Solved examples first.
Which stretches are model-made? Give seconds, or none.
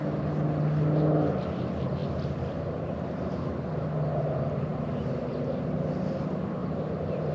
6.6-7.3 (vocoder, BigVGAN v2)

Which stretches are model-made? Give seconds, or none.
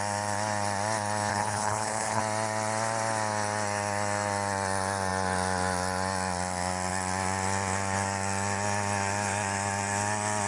1.3-2.2 (codec, HILCodec)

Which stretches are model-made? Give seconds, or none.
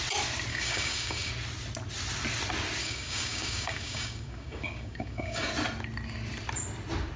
0.5-1.3 (codec, DAC); 2.8-5.5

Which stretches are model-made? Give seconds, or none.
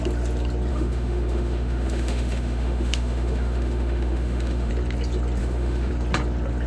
0.7-4.7 (autoencoder, DAC-VAE); 5.4-5.9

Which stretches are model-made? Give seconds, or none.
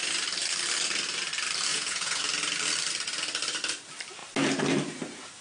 1.7-2.2 (vocoder, Vocos)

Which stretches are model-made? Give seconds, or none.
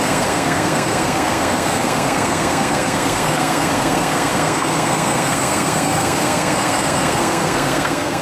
0.0-8.2 (codec, SNAC)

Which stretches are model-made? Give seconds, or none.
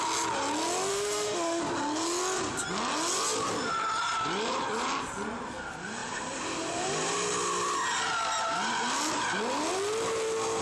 0.9-1.6 (autoencoder, DAC-VAE)